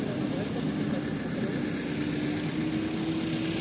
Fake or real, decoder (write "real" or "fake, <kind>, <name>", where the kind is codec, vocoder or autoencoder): real